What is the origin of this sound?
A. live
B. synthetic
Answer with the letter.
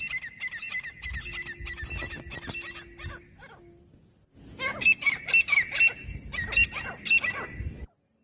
A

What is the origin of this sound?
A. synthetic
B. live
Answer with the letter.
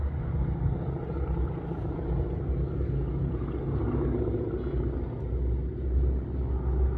B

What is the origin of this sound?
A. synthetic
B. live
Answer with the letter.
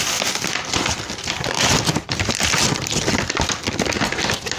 B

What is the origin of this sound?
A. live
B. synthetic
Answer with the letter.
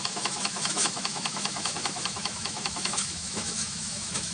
B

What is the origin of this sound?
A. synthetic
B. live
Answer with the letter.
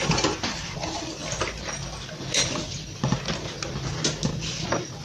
B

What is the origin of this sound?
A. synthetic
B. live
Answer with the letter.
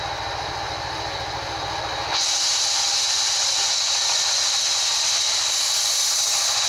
B